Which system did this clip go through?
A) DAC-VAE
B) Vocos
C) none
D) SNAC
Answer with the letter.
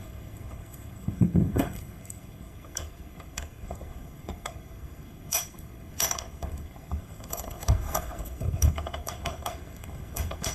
D